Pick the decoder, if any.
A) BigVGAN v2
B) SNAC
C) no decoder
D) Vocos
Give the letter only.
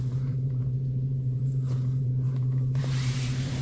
A